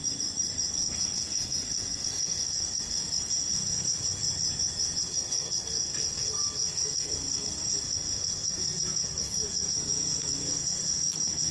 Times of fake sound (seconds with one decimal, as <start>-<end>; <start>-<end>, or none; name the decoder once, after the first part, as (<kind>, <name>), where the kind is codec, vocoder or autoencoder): 0.7-4.2 (codec, SNAC); 5.0-11.5